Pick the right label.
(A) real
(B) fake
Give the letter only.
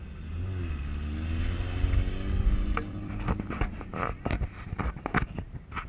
A